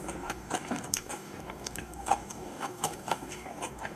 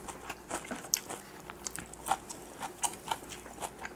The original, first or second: second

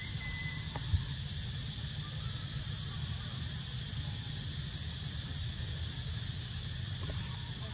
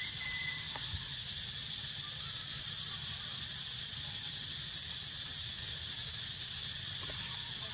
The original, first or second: first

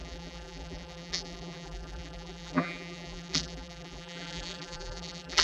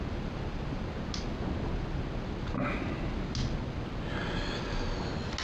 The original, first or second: second